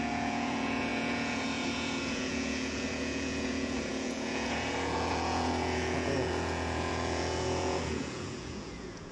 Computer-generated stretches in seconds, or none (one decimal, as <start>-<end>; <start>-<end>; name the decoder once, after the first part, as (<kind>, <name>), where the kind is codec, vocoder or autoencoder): 0.0-9.1 (vocoder, Vocos)

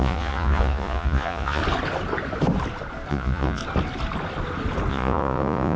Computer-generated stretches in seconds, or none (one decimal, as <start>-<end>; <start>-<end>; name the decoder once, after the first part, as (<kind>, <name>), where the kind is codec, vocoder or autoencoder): 0.0-1.6 (vocoder, Vocos); 3.1-3.6; 4.9-5.8

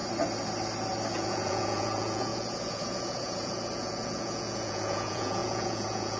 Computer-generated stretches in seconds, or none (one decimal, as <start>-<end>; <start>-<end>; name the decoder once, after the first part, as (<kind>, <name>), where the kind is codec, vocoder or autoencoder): 1.1-6.2 (vocoder, Vocos)

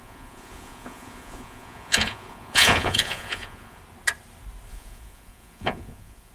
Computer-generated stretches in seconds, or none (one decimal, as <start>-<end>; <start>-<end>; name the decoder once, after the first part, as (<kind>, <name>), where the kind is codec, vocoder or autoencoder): 0.0-3.8 (vocoder, Vocos); 4.7-6.3

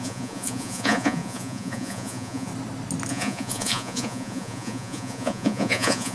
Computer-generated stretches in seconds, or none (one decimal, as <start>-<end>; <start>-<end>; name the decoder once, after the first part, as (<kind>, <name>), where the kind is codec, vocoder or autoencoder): 0.0-2.5 (vocoder, Vocos); 3.1-6.1

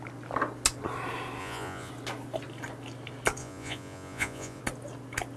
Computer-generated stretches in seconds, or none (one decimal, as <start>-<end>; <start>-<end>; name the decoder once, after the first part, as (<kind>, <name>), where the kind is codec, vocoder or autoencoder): 1.4-1.9 (vocoder, Vocos); 3.4-4.6

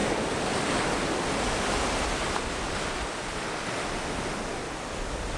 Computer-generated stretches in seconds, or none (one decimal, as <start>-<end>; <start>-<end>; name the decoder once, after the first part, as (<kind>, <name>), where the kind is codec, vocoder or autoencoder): none

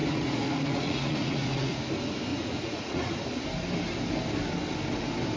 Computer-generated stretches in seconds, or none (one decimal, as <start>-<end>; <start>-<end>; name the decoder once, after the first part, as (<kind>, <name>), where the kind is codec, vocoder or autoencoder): 0.0-1.9 (vocoder, Vocos); 2.3-3.1